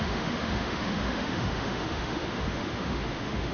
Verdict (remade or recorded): remade